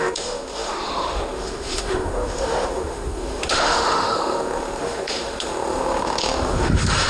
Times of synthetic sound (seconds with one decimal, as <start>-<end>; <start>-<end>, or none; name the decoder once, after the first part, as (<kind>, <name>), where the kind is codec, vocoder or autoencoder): 0.0-7.1 (autoencoder, DAC-VAE)